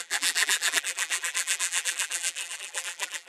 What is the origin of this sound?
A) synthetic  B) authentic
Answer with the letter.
A